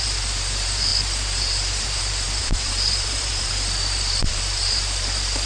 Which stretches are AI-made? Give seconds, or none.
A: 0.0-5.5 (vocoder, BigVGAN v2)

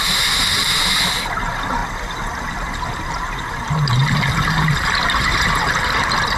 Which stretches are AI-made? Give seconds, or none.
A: 0.0-1.8 (vocoder, BigVGAN v2); 2.5-6.4

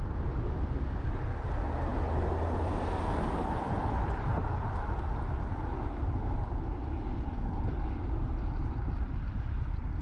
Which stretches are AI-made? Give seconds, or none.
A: none

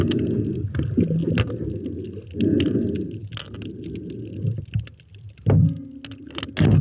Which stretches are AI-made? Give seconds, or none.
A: none

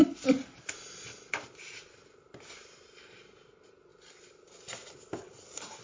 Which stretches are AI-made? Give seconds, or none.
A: none

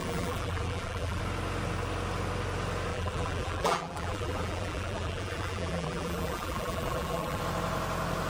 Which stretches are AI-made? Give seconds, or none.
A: 0.0-1.2 (vocoder, BigVGAN v2); 2.9-7.4

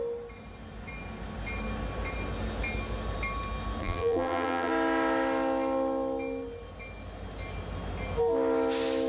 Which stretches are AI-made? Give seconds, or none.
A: 3.8-4.7 (vocoder, BigVGAN v2)

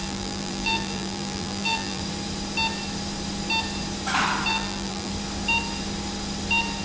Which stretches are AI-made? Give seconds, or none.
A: 0.0-2.0 (vocoder, BigVGAN v2); 4.5-5.1